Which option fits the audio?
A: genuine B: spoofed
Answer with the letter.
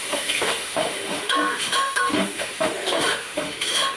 B